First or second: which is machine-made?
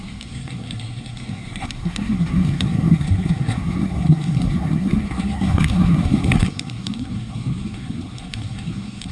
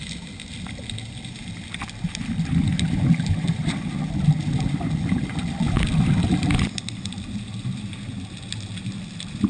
first